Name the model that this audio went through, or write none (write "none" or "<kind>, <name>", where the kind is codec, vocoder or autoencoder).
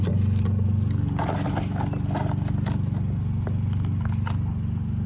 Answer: none